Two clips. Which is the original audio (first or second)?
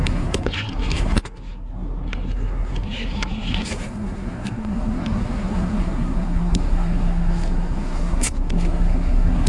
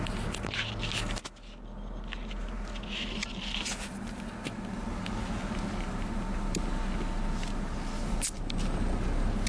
second